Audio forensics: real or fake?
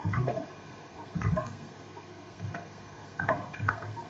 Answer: fake